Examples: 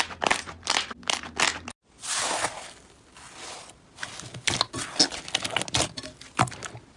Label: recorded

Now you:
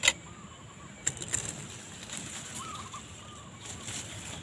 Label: recorded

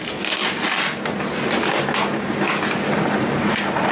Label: recorded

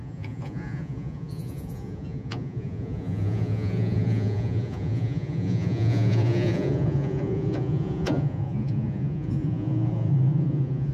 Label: remade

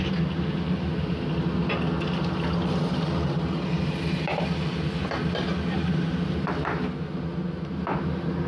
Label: recorded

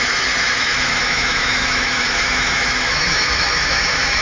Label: remade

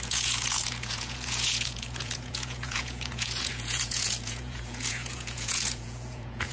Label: remade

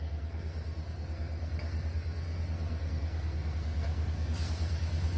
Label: remade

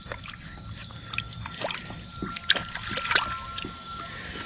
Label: recorded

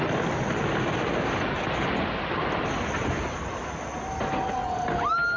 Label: recorded